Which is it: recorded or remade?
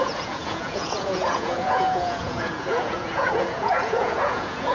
remade